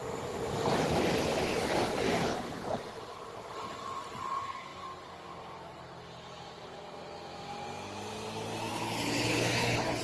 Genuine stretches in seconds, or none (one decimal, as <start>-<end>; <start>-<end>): 0.0-2.2; 2.8-8.7